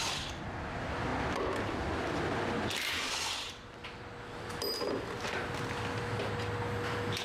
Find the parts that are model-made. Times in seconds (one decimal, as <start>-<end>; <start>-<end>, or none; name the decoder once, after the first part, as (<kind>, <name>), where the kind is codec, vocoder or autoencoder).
none